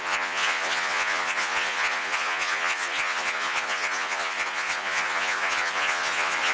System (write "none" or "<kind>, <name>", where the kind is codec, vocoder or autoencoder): vocoder, Vocos